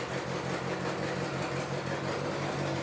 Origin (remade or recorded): recorded